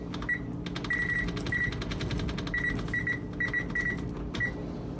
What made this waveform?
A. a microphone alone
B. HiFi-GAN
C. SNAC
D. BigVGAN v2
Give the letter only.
A